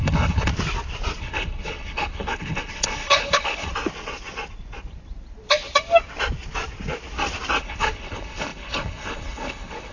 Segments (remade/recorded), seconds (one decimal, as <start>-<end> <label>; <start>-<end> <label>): 0.0-0.5 remade; 0.5-1.2 recorded; 1.2-3.7 remade; 3.7-7.6 recorded; 7.6-9.9 remade